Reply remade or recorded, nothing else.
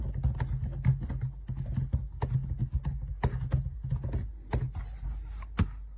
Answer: recorded